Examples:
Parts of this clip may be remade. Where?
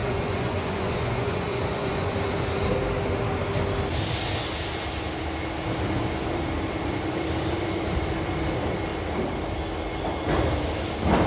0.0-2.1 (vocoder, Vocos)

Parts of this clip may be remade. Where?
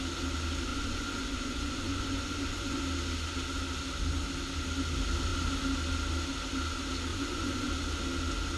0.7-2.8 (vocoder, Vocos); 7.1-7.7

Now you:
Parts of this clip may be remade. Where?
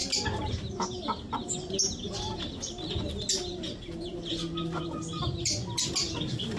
none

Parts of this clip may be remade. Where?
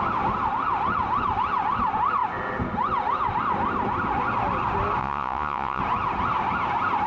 5.0-5.8 (vocoder, Vocos)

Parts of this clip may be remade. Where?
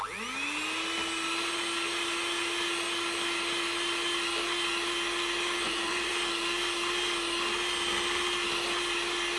5.6-6.1 (vocoder, Vocos)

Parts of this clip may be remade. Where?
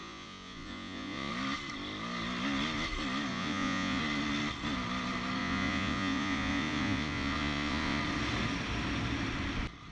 0.0-1.3 (vocoder, Vocos); 3.3-4.0; 5.4-8.0